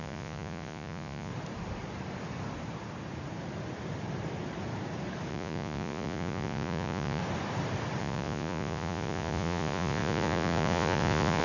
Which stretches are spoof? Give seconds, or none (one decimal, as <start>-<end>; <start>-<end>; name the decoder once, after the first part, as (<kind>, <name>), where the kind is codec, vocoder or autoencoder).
0.0-1.3 (vocoder, Vocos); 5.3-7.2; 8.0-11.4